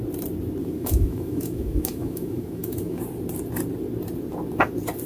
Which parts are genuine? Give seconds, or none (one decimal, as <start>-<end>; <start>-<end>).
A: 0.0-0.6; 3.0-5.1